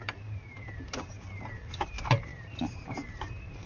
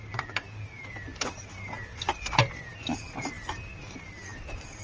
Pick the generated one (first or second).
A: first